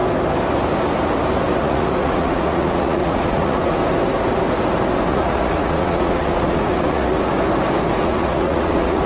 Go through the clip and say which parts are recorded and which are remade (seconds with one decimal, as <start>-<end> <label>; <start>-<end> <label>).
0.0-1.6 recorded; 1.6-3.8 remade; 3.8-5.1 recorded; 5.1-7.3 remade; 7.3-7.9 recorded; 7.9-9.1 remade